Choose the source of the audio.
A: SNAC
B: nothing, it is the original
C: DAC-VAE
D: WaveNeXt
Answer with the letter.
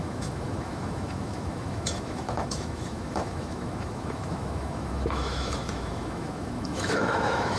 C